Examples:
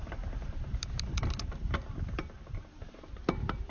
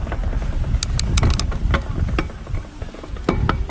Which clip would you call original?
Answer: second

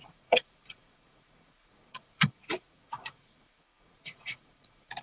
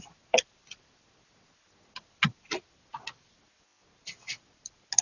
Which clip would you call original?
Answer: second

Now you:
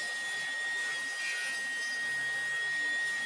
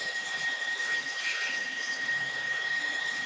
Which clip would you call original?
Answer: first